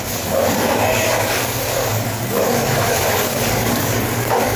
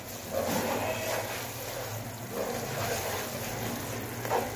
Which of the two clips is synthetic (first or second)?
first